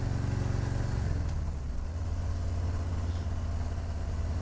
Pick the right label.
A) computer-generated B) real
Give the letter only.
B